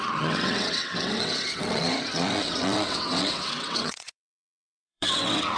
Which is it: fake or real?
fake